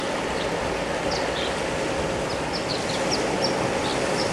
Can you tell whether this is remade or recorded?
recorded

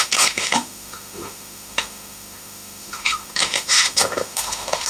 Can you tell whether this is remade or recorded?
remade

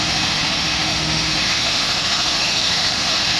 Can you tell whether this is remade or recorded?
remade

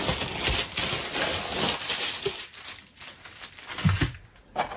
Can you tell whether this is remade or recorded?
recorded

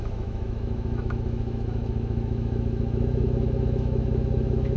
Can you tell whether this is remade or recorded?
remade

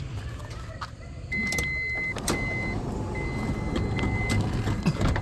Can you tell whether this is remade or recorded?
recorded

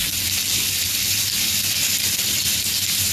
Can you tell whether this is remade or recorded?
recorded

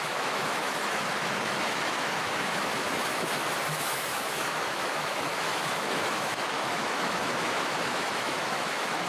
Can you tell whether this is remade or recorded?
remade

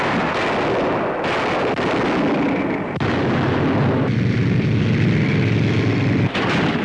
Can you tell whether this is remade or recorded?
recorded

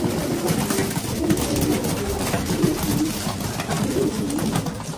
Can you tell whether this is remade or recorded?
recorded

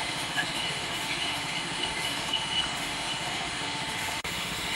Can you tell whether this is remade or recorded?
remade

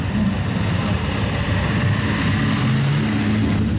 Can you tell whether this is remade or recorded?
recorded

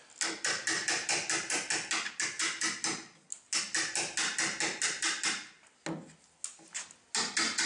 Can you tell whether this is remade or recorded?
recorded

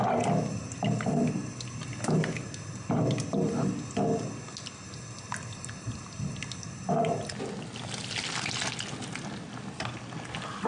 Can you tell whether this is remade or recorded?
recorded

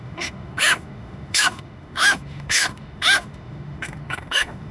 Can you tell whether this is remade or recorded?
remade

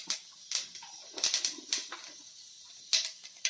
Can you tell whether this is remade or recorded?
recorded